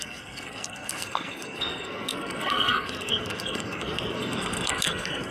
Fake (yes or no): yes